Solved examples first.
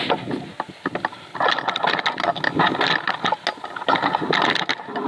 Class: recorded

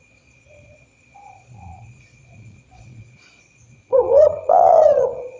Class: remade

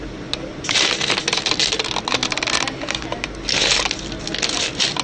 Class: recorded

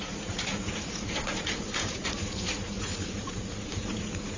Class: remade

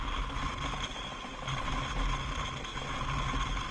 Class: recorded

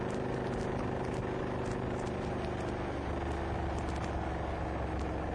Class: recorded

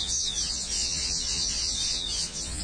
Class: remade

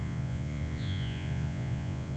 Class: remade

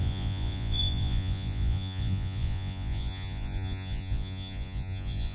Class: remade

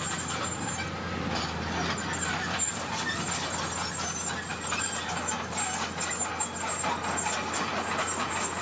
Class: recorded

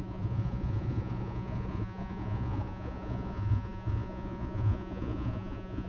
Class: remade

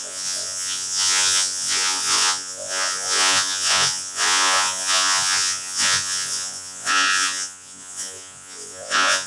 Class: remade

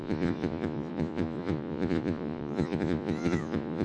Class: remade